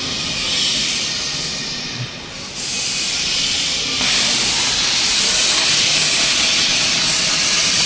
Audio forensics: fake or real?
real